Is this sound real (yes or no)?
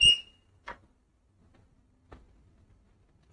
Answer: yes